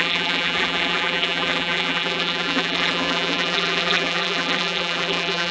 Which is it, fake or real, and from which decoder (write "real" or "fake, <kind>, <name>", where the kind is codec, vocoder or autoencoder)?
fake, vocoder, BigVGAN v2